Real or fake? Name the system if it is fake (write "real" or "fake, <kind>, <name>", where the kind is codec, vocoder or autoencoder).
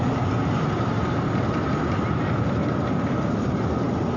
real